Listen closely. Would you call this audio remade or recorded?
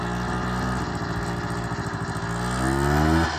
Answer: recorded